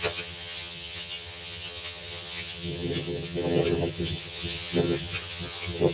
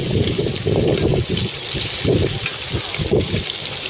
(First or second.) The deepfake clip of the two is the first